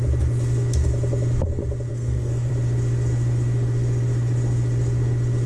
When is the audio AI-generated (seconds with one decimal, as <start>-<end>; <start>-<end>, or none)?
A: 1.9-2.5

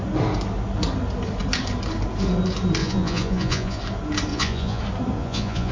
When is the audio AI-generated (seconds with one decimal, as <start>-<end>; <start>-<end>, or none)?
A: 2.8-3.8; 4.3-4.8; 5.2-5.7